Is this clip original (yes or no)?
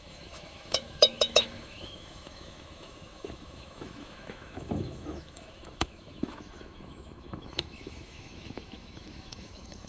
no